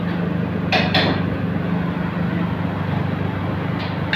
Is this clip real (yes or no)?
yes